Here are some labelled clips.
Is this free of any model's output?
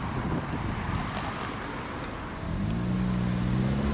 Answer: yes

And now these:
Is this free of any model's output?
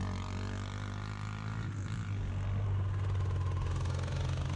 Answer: yes